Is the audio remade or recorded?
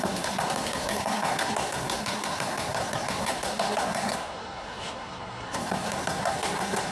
remade